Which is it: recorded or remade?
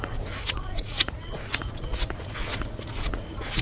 remade